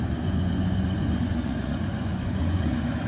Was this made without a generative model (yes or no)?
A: no